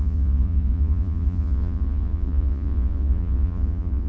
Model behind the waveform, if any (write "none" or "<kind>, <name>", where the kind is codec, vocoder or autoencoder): vocoder, Vocos